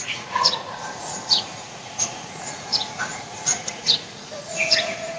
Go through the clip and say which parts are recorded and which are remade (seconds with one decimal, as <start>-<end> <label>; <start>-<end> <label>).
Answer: 0.0-5.2 remade